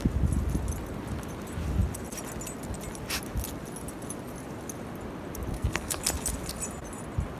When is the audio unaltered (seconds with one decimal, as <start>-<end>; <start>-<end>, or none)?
0.0-5.5; 6.0-7.4